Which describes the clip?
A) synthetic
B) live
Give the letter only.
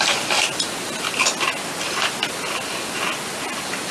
B